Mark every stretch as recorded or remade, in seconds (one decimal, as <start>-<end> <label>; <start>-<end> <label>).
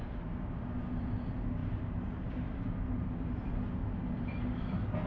0.0-5.1 recorded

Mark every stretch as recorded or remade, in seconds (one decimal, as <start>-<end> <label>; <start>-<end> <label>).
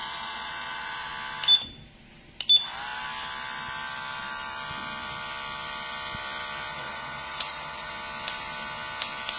0.0-1.1 remade; 1.1-6.7 recorded; 6.7-7.9 remade; 7.9-9.4 recorded